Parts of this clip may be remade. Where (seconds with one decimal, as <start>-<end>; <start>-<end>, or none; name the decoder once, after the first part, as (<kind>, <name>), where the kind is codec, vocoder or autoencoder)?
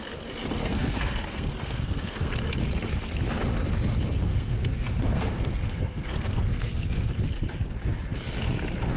0.6-2.3 (codec, SNAC); 4.3-7.1